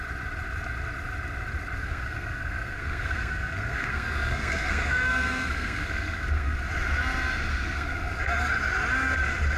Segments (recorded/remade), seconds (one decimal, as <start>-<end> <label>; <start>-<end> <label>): 0.0-1.8 recorded; 1.8-6.7 remade; 6.7-7.5 recorded; 7.5-8.2 remade; 8.2-9.6 recorded